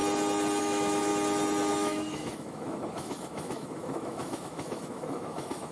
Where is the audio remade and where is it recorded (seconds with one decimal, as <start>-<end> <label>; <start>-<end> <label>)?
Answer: 0.0-0.6 recorded; 0.6-1.1 remade; 1.1-1.7 recorded; 1.7-5.7 remade